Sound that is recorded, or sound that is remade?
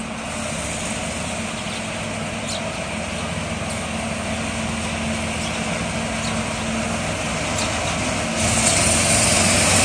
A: recorded